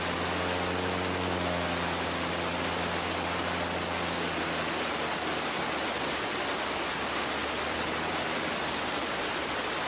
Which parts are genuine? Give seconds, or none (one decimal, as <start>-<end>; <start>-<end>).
0.0-7.4; 9.3-9.9